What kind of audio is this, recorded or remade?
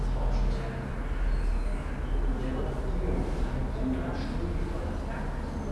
recorded